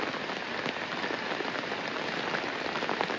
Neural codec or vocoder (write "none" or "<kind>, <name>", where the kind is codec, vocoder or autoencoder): none